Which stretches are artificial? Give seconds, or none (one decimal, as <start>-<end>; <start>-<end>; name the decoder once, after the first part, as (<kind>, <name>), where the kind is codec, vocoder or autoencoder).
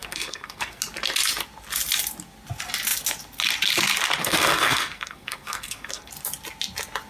0.0-0.8 (codec, SNAC); 4.2-6.1